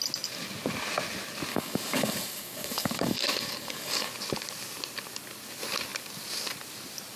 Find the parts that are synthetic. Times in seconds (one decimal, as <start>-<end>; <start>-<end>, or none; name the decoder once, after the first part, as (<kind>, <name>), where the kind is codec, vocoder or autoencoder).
1.5-4.1 (codec, DAC)